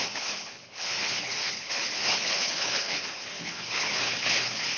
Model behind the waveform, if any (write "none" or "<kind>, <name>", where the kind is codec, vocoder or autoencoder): codec, HILCodec